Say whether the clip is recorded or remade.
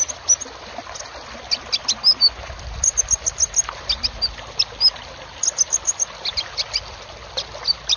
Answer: recorded